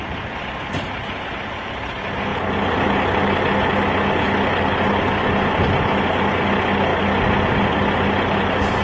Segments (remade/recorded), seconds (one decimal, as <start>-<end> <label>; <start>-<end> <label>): 0.0-8.8 recorded